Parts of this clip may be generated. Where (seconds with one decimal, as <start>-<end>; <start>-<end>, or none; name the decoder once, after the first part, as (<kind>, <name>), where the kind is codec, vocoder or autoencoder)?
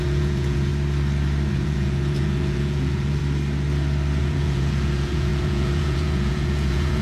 0.0-0.7 (vocoder, Vocos); 1.5-3.2; 4.2-7.0